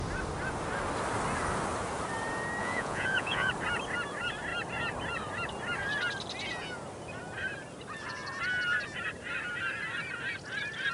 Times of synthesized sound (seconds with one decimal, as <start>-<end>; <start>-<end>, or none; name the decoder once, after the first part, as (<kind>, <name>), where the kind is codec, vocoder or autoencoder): 2.6-3.5 (vocoder, Vocos)